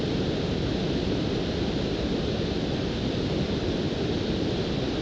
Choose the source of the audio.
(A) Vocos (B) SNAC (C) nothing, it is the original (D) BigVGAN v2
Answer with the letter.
C